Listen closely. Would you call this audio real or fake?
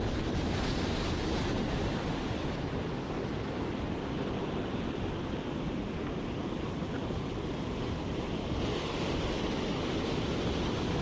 real